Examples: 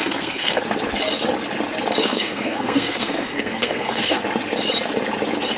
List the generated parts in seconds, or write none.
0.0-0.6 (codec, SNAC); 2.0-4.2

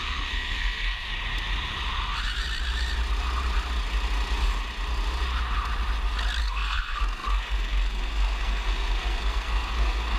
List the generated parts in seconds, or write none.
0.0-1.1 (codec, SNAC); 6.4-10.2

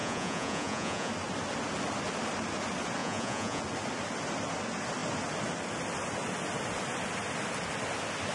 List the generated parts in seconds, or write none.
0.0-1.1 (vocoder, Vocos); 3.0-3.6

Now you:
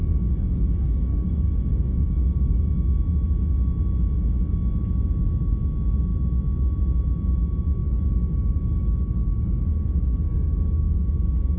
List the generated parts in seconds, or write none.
1.1-2.6 (codec, DAC); 7.8-11.1

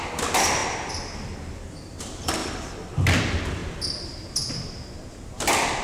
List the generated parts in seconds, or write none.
none